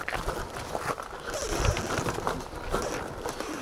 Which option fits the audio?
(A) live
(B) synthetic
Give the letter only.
A